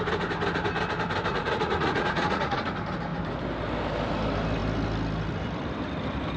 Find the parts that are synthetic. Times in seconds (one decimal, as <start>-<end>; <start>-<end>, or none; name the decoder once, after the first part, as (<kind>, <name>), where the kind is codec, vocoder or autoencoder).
1.3-2.7 (vocoder, Vocos)